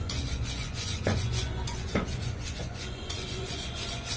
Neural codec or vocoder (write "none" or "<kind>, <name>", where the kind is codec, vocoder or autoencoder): vocoder, Vocos